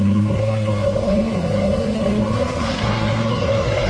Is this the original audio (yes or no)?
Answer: no